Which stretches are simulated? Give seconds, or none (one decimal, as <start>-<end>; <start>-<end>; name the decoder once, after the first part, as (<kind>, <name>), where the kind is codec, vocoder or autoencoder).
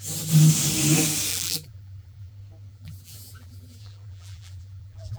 1.3-2.3 (vocoder, BigVGAN v2); 2.7-5.2